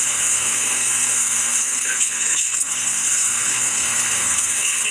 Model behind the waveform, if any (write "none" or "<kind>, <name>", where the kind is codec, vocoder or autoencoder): codec, SNAC